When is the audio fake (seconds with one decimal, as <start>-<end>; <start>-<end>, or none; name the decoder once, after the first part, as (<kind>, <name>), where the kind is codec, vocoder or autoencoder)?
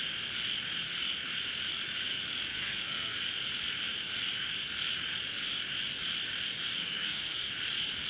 2.5-3.2 (codec, SNAC); 6.8-7.5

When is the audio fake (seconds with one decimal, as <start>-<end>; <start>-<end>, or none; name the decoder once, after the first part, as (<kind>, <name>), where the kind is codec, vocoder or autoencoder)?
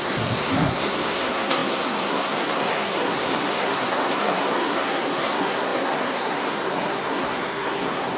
0.0-8.2 (codec, SNAC)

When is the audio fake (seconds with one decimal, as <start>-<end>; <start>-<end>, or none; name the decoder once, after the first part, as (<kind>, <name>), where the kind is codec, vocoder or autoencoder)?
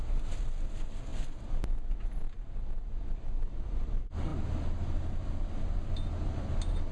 none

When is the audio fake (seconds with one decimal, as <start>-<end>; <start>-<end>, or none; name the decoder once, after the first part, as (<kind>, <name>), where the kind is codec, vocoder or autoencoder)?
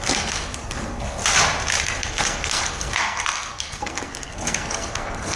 0.0-1.2 (codec, SNAC); 1.8-5.4